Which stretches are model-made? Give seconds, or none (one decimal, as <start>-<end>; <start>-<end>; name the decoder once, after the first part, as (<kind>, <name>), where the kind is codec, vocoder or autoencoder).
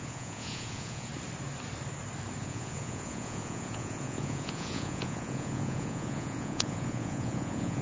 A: 0.0-1.1 (vocoder, Vocos); 2.4-7.8